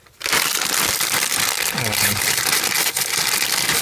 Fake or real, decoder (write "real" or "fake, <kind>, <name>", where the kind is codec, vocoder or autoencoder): real